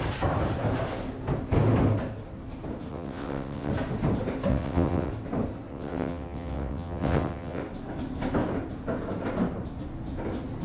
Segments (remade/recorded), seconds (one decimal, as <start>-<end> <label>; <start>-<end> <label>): 0.0-2.9 recorded; 2.9-3.7 remade; 3.7-4.5 recorded; 4.5-5.1 remade; 5.1-5.7 recorded; 5.7-7.6 remade; 7.6-10.6 recorded